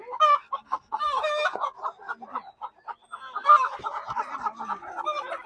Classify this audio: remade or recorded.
recorded